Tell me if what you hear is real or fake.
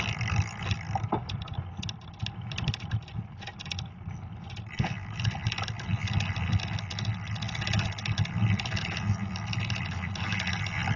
real